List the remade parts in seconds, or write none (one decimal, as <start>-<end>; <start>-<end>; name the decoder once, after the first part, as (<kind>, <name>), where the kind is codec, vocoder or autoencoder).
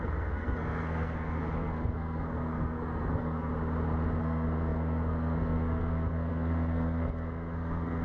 0.0-3.5 (codec, SNAC); 4.2-8.0